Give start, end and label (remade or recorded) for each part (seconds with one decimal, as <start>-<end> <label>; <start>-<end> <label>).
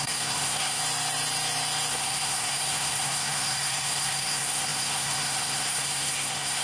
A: 0.0-0.8 remade; 0.8-1.9 recorded; 1.9-6.6 remade